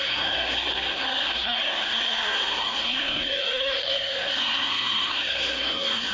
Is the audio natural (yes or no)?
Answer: no